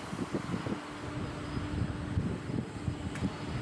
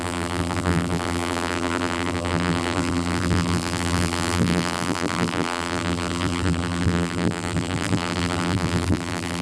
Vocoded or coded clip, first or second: second